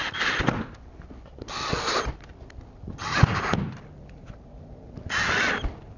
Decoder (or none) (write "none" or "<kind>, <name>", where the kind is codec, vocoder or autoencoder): none